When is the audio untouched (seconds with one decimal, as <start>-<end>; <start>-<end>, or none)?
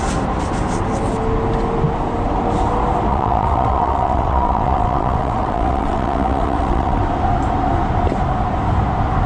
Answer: 0.0-3.1; 7.0-9.3